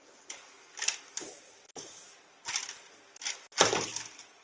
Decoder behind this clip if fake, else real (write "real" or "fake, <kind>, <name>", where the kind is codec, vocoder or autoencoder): real